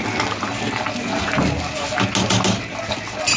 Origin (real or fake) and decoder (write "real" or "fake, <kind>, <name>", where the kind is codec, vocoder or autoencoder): real